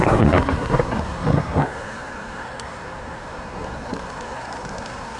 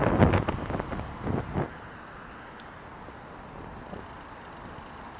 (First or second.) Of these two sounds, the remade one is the first